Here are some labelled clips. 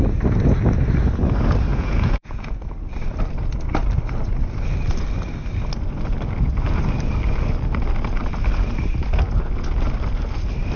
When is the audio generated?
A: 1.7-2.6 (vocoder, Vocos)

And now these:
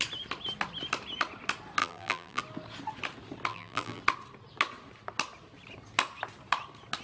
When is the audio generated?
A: 1.8-2.4 (vocoder, BigVGAN v2); 3.5-4.0